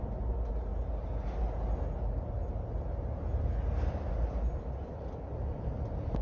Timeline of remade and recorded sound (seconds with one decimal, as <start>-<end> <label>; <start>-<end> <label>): 0.0-6.2 recorded